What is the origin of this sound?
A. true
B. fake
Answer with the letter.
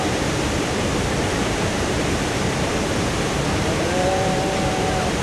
B